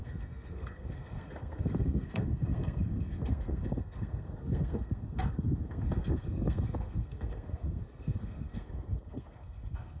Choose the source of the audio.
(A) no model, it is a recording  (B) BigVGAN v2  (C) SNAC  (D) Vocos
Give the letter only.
C